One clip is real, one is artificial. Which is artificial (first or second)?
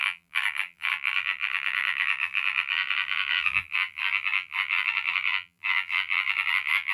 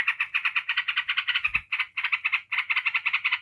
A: first